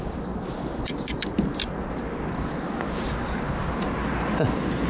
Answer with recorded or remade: recorded